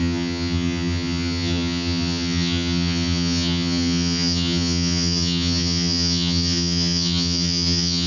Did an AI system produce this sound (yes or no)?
yes